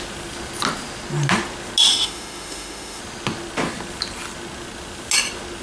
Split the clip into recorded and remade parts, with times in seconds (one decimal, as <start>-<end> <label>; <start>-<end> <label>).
0.0-1.9 recorded; 1.9-3.0 remade; 3.0-5.6 recorded